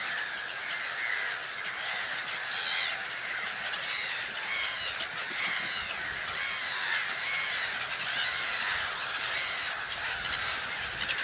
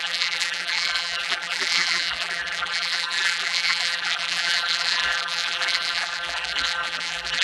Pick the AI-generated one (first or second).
second